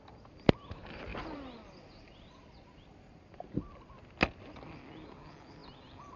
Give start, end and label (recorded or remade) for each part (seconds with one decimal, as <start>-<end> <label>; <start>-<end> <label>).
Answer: 0.0-1.1 recorded; 1.1-3.5 remade; 3.5-6.2 recorded